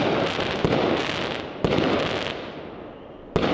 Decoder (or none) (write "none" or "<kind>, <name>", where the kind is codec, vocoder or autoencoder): none